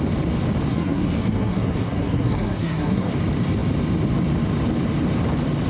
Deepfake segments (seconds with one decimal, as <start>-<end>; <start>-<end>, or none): 0.7-3.1